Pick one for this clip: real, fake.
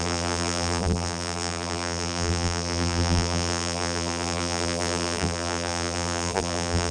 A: fake